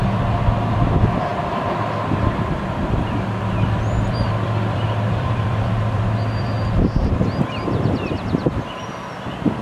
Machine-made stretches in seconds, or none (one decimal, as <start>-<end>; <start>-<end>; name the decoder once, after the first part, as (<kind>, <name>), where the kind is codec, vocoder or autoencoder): 1.3-6.5 (vocoder, BigVGAN v2)